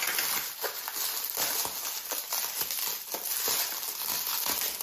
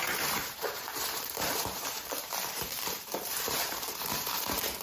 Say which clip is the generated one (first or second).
second